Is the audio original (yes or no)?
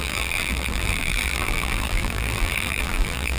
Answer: no